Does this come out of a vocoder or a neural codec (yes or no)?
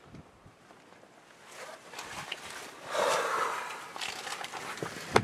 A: yes